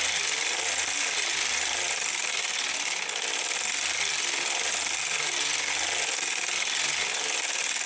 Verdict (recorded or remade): recorded